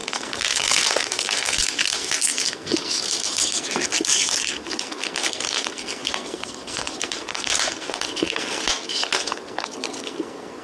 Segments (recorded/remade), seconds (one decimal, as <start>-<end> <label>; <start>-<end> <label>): 0.0-10.6 remade